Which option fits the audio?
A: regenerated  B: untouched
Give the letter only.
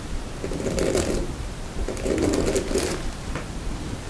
B